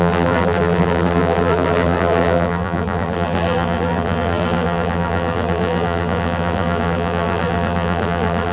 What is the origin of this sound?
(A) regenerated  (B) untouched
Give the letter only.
A